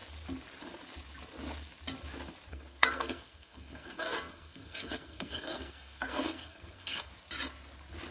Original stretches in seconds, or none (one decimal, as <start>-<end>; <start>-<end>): 0.0-2.5; 7.1-8.1